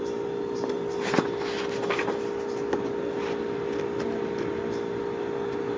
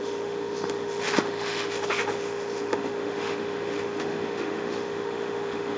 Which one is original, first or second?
first